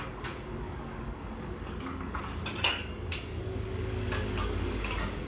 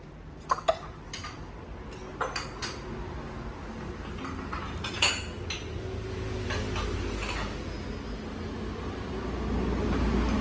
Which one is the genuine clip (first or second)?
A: second